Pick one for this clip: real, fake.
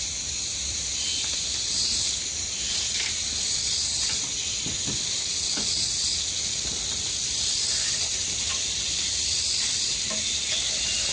real